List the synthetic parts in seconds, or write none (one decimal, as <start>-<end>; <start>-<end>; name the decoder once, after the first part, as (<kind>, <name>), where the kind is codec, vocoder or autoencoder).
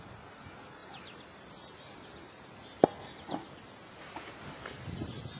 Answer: none